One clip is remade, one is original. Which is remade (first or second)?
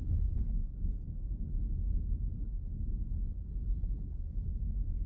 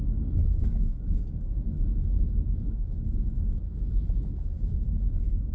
second